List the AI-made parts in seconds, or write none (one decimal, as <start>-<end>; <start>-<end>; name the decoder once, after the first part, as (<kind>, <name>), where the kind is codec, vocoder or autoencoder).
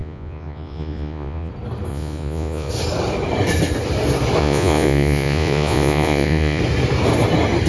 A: 0.0-1.5 (vocoder, Vocos); 1.9-2.7; 4.4-6.6